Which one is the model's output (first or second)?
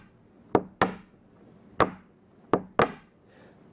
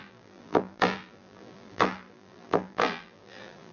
second